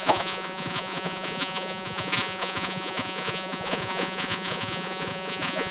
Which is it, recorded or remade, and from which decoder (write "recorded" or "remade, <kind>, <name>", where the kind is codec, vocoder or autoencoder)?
remade, vocoder, Vocos